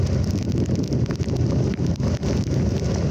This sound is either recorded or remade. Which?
recorded